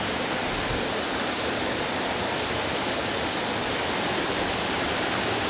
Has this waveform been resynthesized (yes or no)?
no